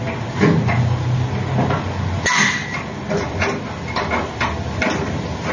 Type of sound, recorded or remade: recorded